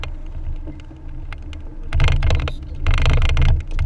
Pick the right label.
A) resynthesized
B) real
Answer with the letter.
B